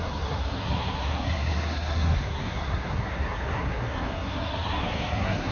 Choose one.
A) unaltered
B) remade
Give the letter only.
B